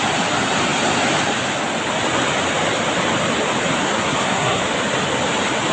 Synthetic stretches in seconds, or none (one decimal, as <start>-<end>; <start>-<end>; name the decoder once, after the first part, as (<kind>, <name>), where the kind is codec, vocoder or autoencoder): 3.8-4.6 (codec, SNAC)